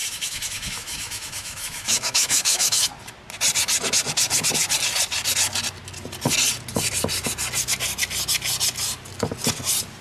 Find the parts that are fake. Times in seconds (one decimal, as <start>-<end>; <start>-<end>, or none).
0.0-2.9